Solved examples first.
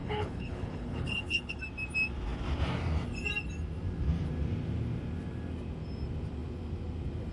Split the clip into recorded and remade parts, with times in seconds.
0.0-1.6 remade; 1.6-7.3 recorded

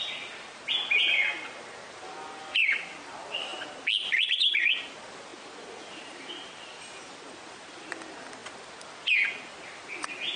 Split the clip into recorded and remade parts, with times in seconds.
0.0-5.3 recorded; 5.3-7.1 remade; 7.1-10.4 recorded

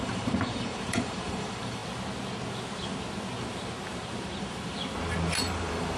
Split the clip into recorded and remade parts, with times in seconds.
0.0-1.8 remade; 1.8-5.4 recorded; 5.4-6.0 remade

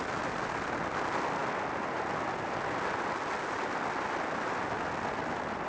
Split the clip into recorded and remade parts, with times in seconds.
0.0-5.7 recorded

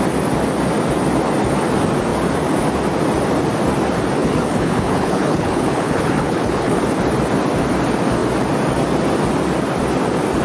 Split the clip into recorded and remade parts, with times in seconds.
0.0-4.2 recorded; 4.2-6.8 remade; 6.8-10.4 recorded

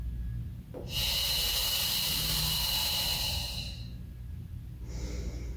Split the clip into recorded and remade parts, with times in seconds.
0.0-1.5 recorded; 1.5-3.6 remade; 3.6-5.6 recorded

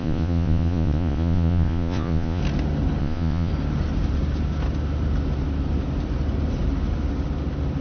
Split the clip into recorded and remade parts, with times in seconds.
0.0-2.4 remade; 2.4-3.0 recorded; 3.0-3.5 remade; 3.5-7.8 recorded

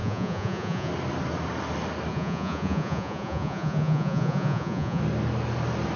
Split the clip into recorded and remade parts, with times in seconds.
0.0-0.9 remade; 0.9-2.1 recorded; 2.1-5.0 remade; 5.0-6.0 recorded